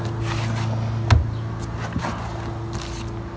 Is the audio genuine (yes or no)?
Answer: yes